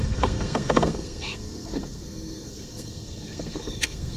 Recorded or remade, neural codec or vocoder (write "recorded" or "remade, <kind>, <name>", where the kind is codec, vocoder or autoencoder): remade, codec, SNAC